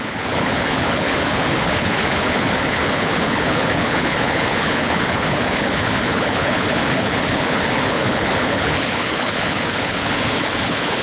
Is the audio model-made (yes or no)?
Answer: yes